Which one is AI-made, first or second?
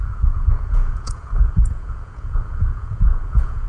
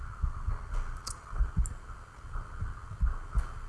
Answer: first